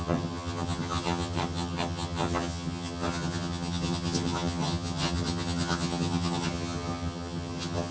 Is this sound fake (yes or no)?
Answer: yes